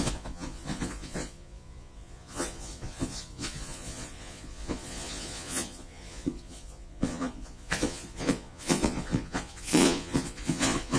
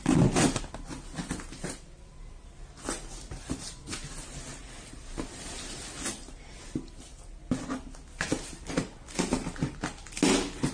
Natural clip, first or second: second